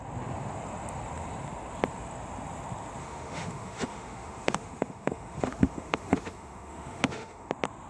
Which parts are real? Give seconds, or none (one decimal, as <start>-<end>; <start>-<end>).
0.0-3.0; 7.5-7.9